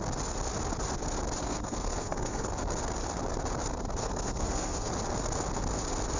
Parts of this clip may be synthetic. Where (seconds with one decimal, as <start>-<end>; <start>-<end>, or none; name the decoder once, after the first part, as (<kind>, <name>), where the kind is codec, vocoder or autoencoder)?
1.4-2.5 (codec, SNAC); 4.0-4.9